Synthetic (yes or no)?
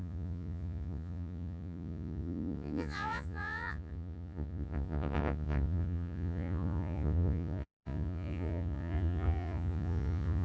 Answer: yes